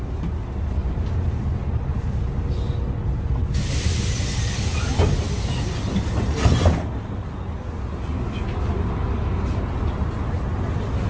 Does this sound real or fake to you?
real